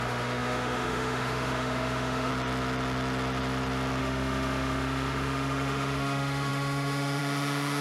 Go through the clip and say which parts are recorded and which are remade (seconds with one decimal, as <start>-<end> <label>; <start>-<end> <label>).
0.0-2.3 remade; 2.3-4.0 recorded; 4.0-7.8 remade